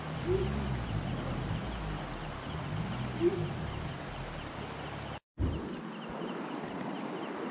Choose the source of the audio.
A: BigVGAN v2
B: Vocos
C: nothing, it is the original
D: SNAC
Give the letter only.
C